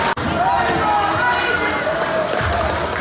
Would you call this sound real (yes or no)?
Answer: yes